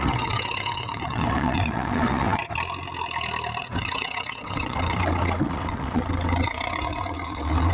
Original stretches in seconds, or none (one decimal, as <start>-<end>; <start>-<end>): 2.4-3.6